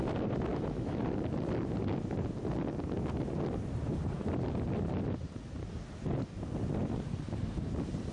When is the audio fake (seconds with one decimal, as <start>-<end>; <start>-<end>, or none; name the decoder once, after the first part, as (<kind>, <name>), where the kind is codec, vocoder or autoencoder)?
0.5-1.0 (autoencoder, DAC-VAE)